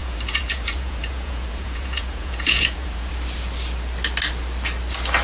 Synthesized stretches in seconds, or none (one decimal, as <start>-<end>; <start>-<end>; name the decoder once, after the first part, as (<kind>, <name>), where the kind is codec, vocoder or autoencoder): 0.0-3.1 (vocoder, Vocos)